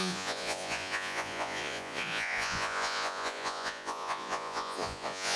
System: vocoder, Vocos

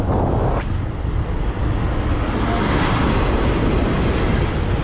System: none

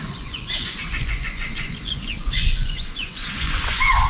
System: vocoder, Vocos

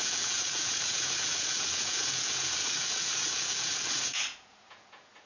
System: vocoder, Vocos